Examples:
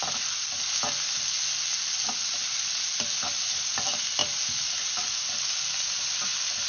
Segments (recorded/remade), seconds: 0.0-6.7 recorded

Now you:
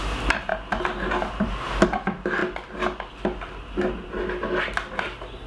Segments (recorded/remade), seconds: 0.0-5.5 recorded

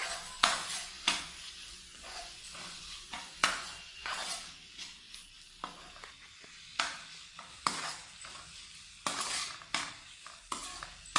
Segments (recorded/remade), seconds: 0.0-4.1 remade; 4.1-11.2 recorded

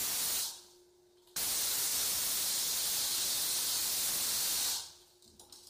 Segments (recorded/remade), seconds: 0.0-5.7 recorded

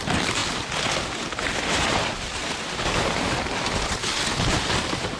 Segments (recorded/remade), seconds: 0.0-0.4 remade; 0.4-2.0 recorded; 2.0-2.4 remade; 2.4-4.8 recorded; 4.8-5.2 remade

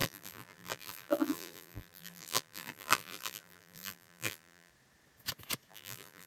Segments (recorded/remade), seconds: 0.0-4.7 remade; 4.7-5.7 recorded; 5.7-6.3 remade